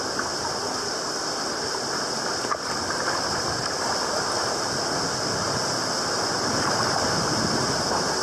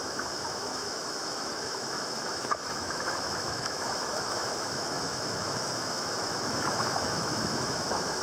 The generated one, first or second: second